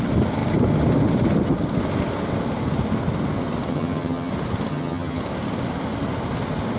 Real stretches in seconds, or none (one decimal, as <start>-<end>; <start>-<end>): 0.0-3.7; 4.3-4.7; 5.2-6.8